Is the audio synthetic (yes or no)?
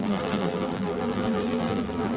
yes